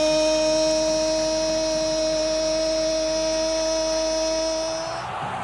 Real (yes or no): yes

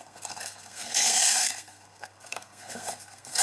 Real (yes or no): no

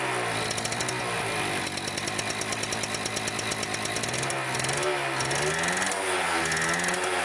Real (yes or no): yes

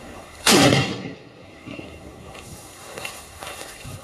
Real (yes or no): no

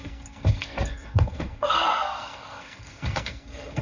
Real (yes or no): no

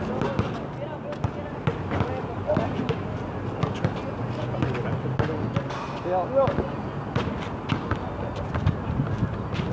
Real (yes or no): yes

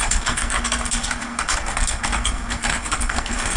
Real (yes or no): no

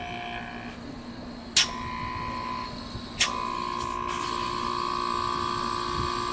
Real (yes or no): yes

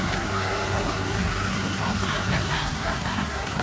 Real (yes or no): no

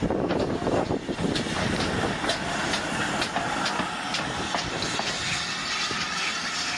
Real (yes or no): yes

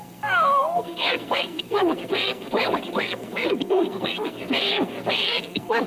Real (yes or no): no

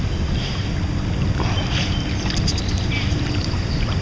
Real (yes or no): yes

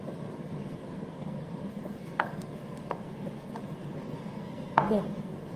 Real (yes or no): no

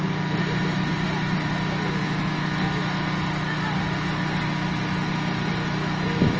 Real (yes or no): yes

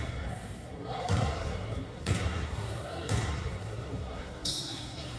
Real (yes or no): no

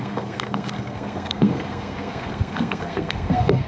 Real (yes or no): no